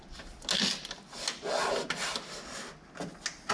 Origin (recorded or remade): recorded